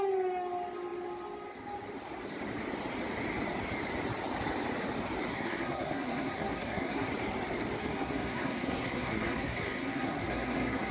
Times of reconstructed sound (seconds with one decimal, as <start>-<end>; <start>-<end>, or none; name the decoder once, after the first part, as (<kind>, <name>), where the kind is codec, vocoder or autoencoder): 5.3-7.1 (codec, SNAC); 7.8-10.9